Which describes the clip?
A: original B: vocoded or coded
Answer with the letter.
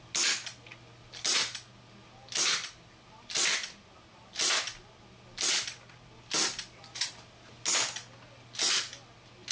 A